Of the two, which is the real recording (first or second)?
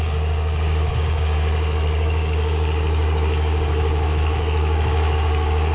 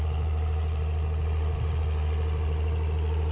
second